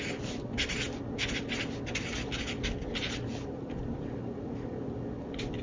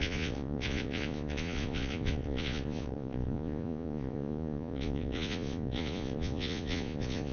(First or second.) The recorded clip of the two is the first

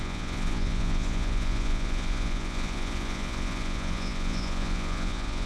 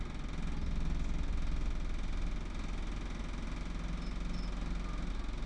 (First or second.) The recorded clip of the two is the second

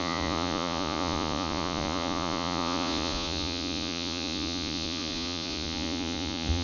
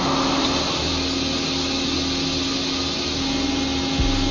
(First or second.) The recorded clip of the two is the second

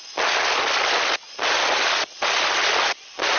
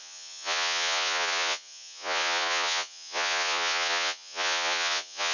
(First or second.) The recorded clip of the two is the first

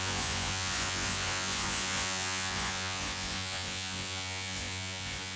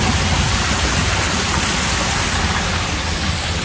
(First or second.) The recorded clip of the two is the second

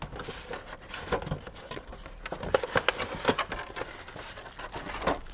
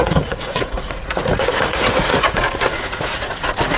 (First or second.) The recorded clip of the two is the first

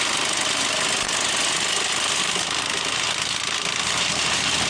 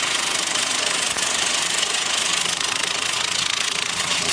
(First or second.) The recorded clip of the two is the first